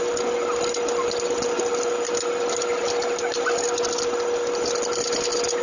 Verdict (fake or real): real